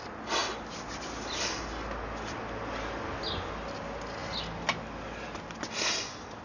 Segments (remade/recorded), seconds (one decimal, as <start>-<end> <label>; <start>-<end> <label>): 0.0-6.4 recorded